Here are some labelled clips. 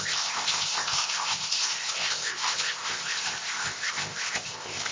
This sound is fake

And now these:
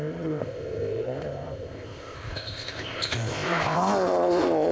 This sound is fake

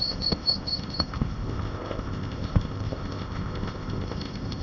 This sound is fake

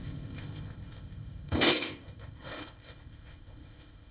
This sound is fake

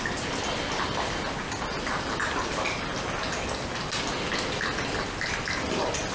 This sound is real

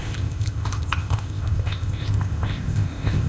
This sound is fake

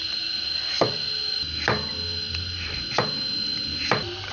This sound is real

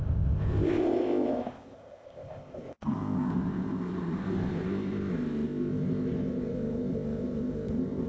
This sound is fake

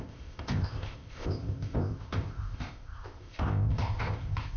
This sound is fake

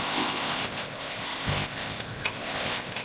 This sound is fake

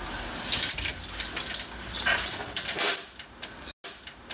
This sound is real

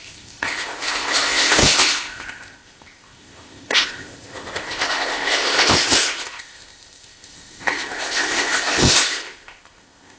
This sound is fake